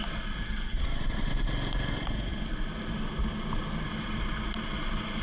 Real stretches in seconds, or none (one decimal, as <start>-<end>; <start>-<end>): 0.0-0.7; 1.3-5.2